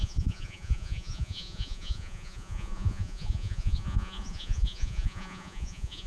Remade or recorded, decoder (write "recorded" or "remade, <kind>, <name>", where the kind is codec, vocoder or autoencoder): remade, vocoder, Vocos